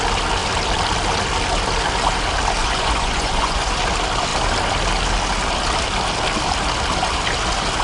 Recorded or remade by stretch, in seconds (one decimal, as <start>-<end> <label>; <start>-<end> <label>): 0.0-2.6 recorded; 2.6-3.7 remade; 3.7-7.8 recorded